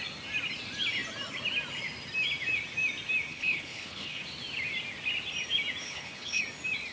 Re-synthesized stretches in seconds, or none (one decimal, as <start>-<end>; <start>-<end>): 3.3-4.2; 5.8-6.4